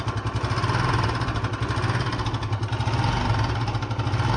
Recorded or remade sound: recorded